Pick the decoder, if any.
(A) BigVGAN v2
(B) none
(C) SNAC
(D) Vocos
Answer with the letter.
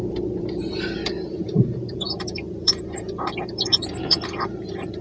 A